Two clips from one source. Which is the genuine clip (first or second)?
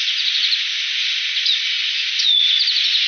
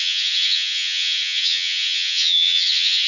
first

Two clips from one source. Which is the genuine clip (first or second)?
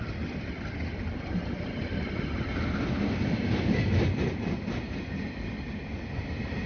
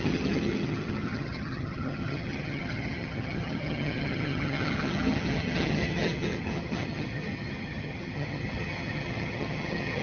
first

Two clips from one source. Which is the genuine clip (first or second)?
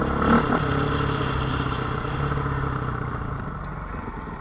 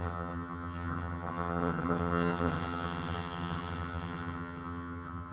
first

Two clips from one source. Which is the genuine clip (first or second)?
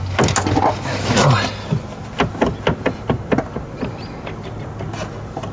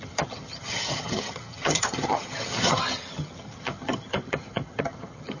first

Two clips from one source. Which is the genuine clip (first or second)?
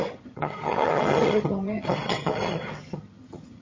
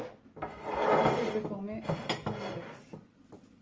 second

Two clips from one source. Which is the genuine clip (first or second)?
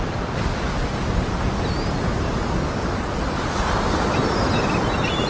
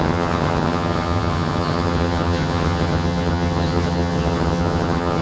first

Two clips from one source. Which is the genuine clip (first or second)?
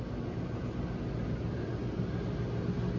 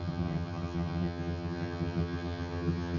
first